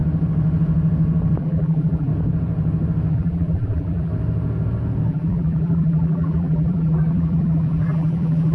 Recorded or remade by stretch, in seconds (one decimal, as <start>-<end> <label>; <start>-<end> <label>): 0.0-1.4 recorded; 1.4-2.1 remade; 2.1-3.1 recorded; 3.1-4.1 remade; 4.1-5.1 recorded; 5.1-8.5 remade